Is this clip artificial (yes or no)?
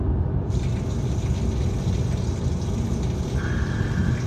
no